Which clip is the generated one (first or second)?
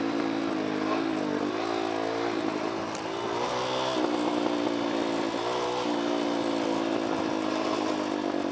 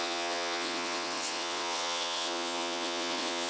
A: second